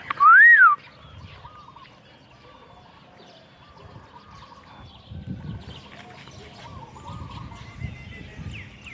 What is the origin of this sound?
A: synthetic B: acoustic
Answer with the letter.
B